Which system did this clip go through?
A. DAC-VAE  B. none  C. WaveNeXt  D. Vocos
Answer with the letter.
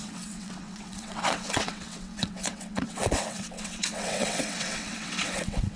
C